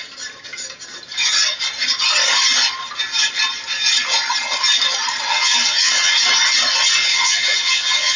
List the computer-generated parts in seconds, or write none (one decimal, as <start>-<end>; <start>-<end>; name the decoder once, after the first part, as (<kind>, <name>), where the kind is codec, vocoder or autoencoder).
5.3-6.2 (vocoder, HiFi-GAN); 7.1-8.2